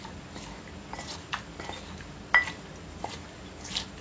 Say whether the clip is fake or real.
real